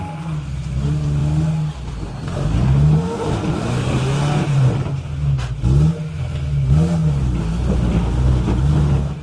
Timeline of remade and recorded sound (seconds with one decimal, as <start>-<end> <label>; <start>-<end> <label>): 0.0-9.2 recorded